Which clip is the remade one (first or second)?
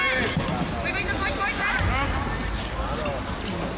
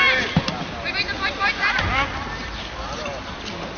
second